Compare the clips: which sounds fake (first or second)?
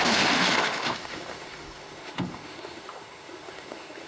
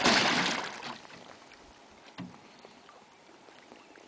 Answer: first